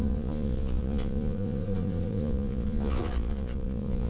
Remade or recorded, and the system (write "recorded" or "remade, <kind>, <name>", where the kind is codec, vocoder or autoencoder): remade, vocoder, Vocos